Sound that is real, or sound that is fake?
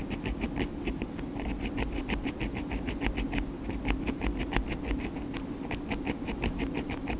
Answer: real